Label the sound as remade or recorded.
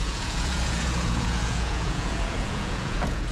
remade